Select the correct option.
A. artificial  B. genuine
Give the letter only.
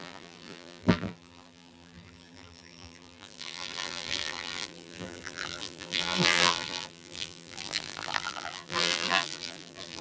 A